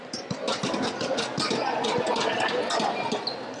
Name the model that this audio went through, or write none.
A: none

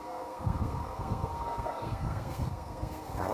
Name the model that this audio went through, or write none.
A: codec, SNAC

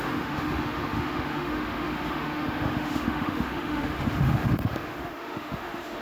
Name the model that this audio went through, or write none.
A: autoencoder, DAC-VAE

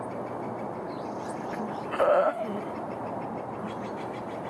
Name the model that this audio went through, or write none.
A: none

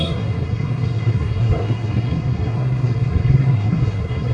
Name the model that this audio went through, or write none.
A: codec, SNAC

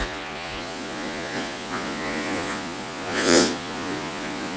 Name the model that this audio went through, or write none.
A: vocoder, Vocos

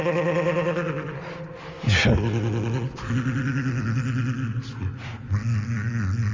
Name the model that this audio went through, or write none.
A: none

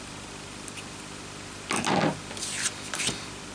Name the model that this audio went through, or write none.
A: vocoder, BigVGAN v2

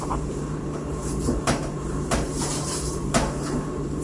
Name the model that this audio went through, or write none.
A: vocoder, BigVGAN v2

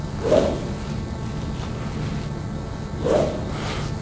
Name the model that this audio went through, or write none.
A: none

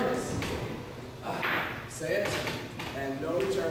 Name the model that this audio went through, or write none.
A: none